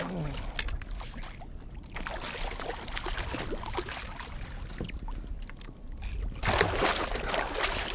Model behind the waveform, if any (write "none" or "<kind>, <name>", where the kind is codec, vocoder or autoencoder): none